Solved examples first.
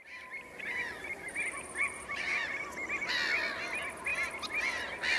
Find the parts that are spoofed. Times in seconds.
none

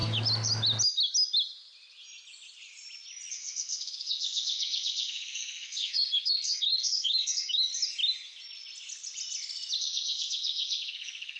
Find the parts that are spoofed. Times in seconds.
3.3-7.7 (codec, SNAC); 9.8-11.4

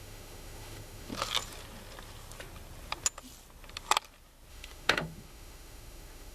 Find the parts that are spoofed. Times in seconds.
0.0-1.1 (autoencoder, DAC-VAE); 4.5-6.3

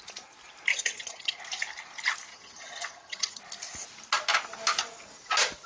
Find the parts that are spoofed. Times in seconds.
0.7-1.4 (vocoder, HiFi-GAN); 2.3-3.4

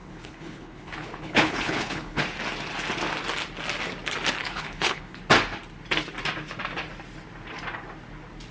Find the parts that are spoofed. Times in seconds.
0.0-2.2 (codec, HILCodec); 4.4-5.2

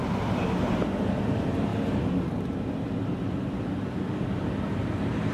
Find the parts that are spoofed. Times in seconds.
none

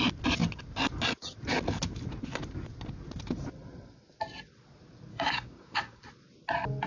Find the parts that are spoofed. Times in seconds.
5.1-6.0 (codec, DAC)